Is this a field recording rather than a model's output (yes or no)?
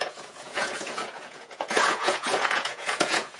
no